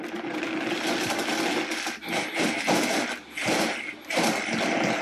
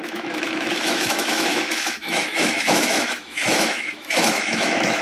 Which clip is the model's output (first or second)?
second